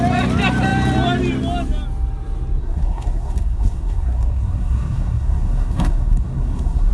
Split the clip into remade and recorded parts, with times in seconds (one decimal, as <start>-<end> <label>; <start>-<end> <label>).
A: 0.0-2.6 recorded; 2.6-6.9 remade